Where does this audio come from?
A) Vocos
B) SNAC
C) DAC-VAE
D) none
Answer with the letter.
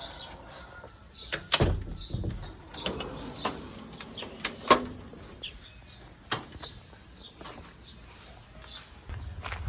D